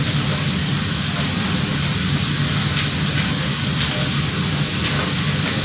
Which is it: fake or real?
real